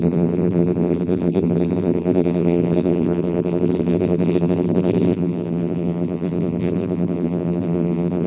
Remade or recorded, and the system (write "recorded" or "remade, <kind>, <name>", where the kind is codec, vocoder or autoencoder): remade, vocoder, BigVGAN v2